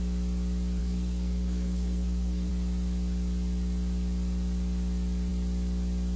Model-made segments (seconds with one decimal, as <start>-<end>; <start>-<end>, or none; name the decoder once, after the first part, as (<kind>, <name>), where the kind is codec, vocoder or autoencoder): 0.8-2.5 (codec, SNAC)